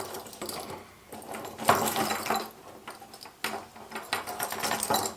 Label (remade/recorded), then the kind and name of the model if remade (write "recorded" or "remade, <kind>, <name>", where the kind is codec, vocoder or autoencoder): recorded